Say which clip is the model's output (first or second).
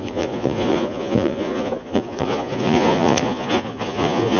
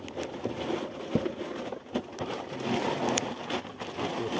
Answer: first